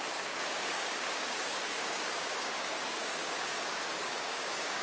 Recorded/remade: remade